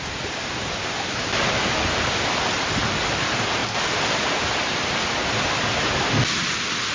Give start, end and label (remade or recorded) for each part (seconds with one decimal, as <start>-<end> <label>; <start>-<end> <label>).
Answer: 0.0-6.9 recorded